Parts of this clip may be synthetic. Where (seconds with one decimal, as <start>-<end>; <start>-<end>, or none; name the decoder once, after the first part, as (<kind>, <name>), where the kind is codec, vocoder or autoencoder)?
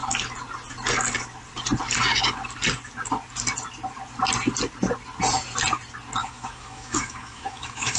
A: 6.2-8.0 (autoencoder, DAC-VAE)